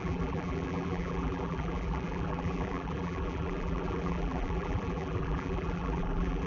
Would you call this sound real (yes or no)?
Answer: no